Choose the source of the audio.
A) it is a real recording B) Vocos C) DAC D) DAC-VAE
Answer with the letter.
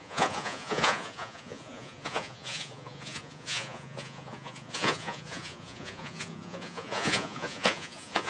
B